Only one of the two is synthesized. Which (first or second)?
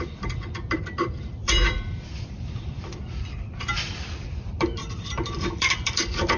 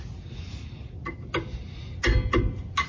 first